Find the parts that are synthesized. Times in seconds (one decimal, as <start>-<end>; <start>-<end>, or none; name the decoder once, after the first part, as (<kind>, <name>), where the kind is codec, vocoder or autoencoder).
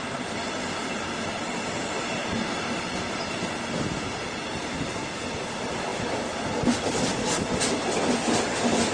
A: none